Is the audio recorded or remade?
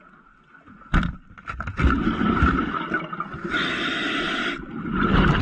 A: recorded